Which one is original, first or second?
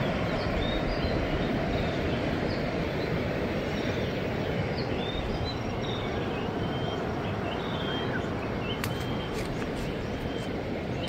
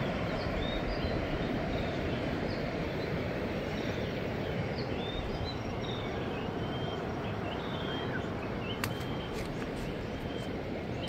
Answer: first